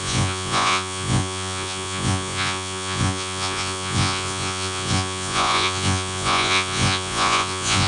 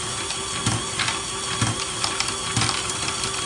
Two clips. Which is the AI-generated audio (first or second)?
first